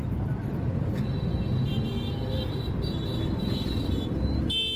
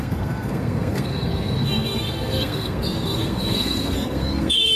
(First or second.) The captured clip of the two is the first